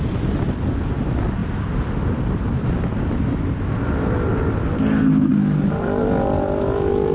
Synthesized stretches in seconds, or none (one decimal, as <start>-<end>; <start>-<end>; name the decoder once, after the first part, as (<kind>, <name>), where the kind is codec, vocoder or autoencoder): 1.4-3.0 (vocoder, BigVGAN v2)